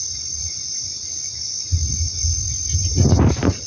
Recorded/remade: recorded